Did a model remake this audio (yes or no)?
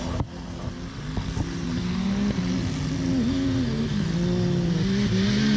no